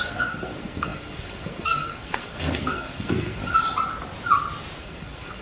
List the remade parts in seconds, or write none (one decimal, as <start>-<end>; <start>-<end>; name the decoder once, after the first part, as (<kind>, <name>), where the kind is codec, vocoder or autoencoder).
0.0-3.4 (codec, SNAC); 4.8-5.4